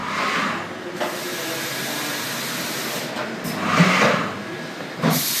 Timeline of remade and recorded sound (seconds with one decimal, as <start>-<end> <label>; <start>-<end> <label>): 0.0-5.4 recorded